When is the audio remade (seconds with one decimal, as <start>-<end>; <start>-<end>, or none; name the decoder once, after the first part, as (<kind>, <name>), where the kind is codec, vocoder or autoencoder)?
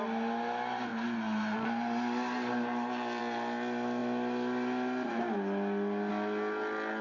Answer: none